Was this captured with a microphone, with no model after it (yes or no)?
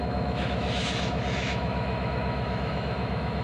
no